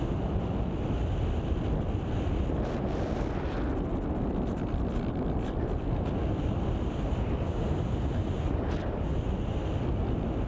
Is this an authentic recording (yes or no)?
yes